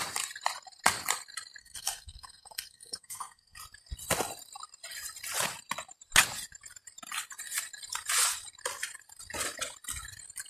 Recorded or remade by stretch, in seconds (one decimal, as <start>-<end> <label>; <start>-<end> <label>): 0.0-1.6 recorded; 1.6-3.6 remade; 3.6-10.5 recorded